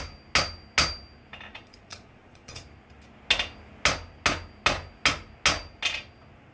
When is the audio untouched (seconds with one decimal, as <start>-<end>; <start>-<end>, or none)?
0.0-1.5; 2.6-6.5